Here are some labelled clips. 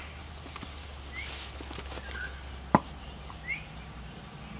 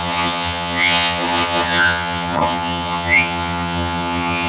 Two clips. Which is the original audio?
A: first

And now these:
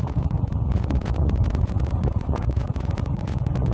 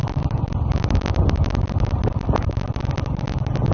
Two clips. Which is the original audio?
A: second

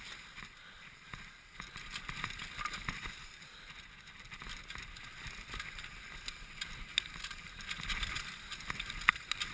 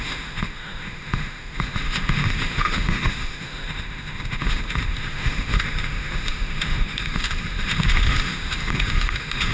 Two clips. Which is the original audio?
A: first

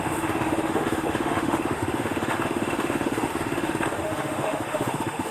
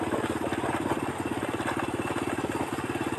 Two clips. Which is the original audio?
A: second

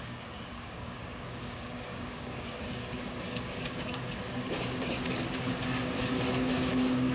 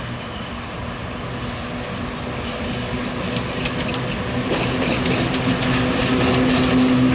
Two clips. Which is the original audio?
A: second